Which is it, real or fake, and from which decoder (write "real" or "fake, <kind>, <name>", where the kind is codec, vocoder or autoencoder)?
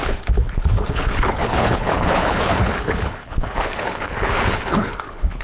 fake, codec, HILCodec